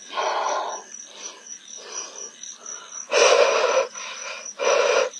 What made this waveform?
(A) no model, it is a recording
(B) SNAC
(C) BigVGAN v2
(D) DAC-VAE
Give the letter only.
A